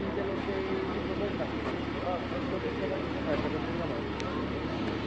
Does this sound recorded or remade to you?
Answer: recorded